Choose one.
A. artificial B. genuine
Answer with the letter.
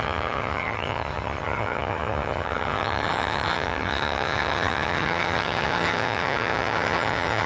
A